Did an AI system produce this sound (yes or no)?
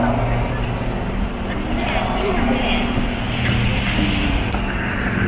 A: no